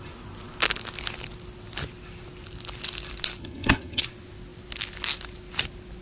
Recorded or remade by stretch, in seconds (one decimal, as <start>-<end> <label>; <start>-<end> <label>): 0.0-3.4 recorded; 3.4-4.0 remade; 4.0-6.0 recorded